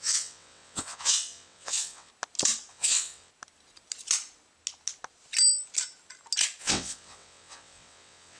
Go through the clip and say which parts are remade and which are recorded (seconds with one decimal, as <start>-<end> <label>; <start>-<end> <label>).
0.0-2.1 remade; 2.1-2.7 recorded; 2.7-3.3 remade; 3.3-6.6 recorded; 6.6-8.4 remade